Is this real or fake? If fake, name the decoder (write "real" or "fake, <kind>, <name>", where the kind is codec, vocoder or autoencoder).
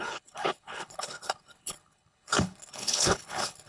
fake, codec, HILCodec